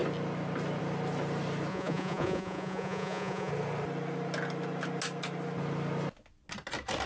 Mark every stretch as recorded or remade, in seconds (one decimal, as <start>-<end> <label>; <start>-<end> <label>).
0.0-1.7 recorded; 1.7-3.5 remade; 3.5-7.1 recorded